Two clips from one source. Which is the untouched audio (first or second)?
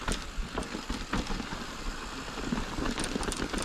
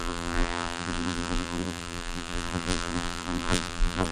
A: first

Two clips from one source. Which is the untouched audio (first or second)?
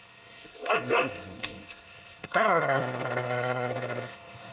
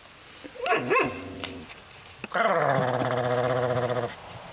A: second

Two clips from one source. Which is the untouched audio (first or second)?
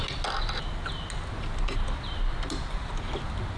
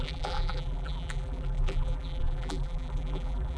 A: first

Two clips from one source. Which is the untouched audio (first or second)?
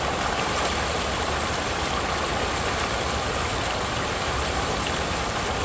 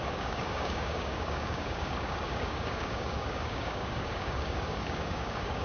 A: first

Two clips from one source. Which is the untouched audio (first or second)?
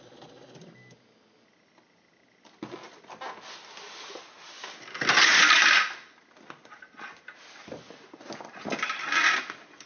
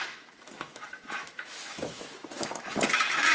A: first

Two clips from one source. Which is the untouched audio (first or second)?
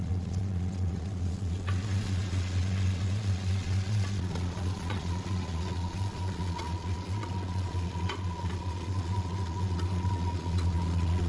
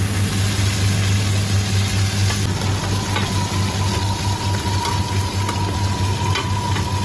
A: second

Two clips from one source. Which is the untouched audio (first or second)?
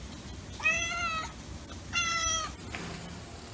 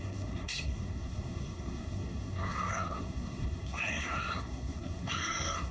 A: first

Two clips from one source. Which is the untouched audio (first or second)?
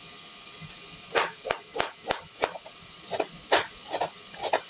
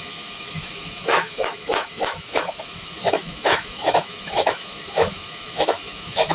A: first